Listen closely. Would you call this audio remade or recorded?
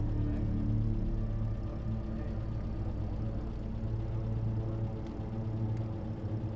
recorded